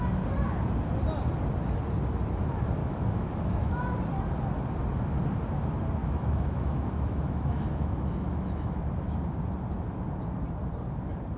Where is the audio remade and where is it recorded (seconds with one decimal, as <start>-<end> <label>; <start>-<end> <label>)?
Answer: 0.0-2.8 recorded; 2.8-3.7 remade; 3.7-6.0 recorded; 6.0-8.8 remade; 8.8-11.4 recorded